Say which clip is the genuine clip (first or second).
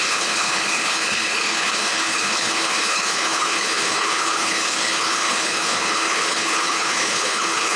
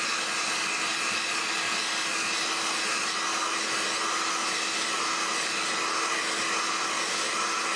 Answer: second